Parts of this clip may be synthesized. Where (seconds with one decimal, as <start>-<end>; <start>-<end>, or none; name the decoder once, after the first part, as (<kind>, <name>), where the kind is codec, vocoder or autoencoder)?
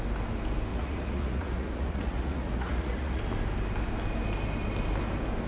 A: 0.7-3.2 (vocoder, Vocos)